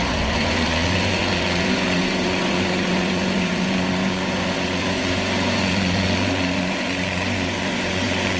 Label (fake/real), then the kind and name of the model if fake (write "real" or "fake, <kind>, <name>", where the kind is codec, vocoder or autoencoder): fake, vocoder, Vocos